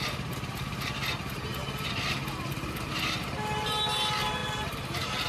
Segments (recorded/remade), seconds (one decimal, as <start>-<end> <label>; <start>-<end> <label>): 0.0-5.3 recorded